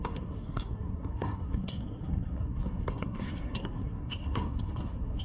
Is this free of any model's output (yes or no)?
no